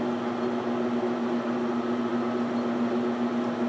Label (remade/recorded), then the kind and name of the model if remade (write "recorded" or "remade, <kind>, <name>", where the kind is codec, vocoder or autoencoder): recorded